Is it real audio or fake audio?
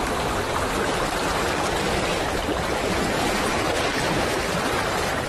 fake